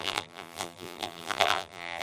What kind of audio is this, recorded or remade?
remade